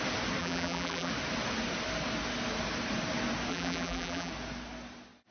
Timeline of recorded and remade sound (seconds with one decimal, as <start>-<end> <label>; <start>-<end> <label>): 0.0-0.4 recorded; 0.4-1.1 remade; 1.1-3.5 recorded; 3.5-4.3 remade; 4.3-5.3 recorded